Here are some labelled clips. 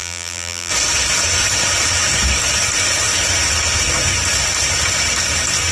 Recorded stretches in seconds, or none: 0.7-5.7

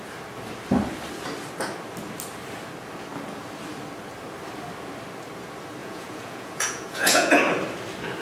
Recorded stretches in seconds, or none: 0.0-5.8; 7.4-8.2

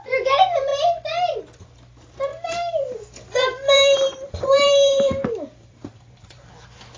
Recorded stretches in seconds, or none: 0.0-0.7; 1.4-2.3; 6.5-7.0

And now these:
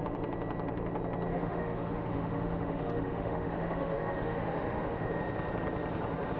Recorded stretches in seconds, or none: 0.0-1.3; 5.1-6.4

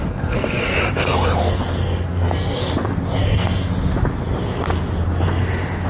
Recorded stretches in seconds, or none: 0.8-1.4; 2.7-3.2; 3.7-5.9

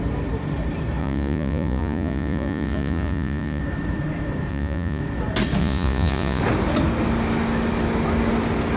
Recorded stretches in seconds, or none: 0.0-1.0; 3.6-4.5; 5.0-5.6; 6.4-8.8

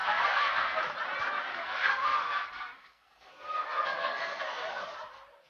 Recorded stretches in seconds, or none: 0.8-1.5; 4.8-5.5

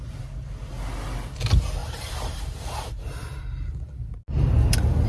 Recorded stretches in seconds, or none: 0.0-1.8; 2.4-5.1